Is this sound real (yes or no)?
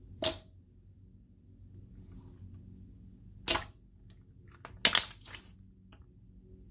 yes